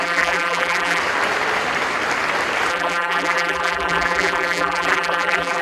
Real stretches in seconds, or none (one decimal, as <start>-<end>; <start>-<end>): 1.0-2.7

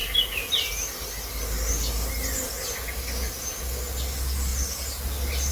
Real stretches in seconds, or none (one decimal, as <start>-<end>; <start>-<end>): 0.0-5.5

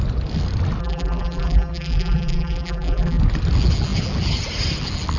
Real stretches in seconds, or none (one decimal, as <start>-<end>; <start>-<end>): 0.0-0.8; 3.2-5.2

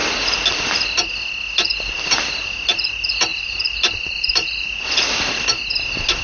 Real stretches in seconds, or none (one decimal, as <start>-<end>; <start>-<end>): 0.0-3.3; 5.0-6.2

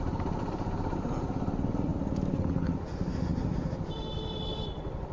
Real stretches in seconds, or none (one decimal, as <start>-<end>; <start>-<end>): 0.0-5.1

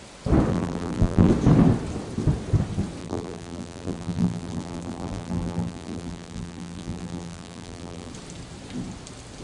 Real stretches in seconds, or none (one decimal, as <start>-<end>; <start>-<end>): 0.0-0.5; 1.3-3.0; 8.1-9.4